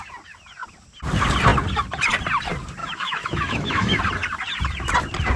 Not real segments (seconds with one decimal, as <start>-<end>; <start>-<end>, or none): 2.8-4.0